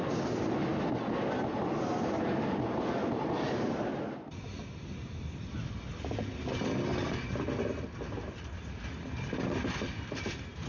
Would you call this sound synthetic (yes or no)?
no